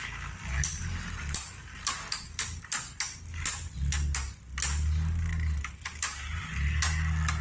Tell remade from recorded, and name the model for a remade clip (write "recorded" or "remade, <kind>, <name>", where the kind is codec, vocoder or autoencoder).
recorded